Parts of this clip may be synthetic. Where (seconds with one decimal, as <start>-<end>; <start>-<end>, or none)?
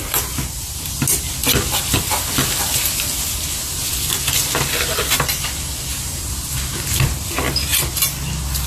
5.9-6.5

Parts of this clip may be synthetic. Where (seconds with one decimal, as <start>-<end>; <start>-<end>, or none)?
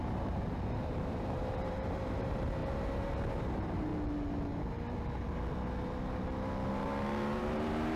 0.0-3.9; 6.7-8.0